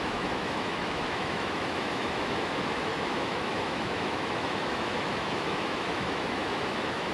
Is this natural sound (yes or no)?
no